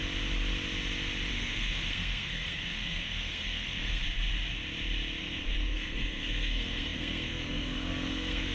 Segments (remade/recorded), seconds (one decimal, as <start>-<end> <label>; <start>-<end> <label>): 0.0-1.3 recorded; 1.3-4.0 remade; 4.0-5.2 recorded; 5.2-8.5 remade